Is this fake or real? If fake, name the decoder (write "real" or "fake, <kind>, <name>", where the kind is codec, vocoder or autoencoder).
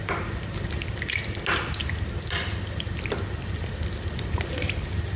real